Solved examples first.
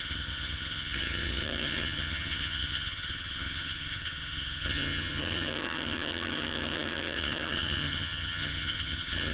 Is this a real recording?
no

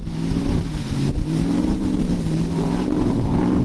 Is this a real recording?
no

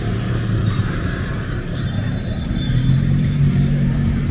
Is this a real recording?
no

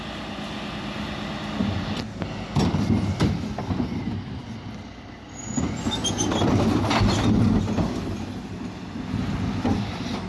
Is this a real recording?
yes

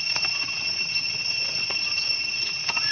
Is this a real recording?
yes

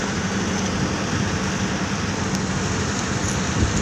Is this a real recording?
yes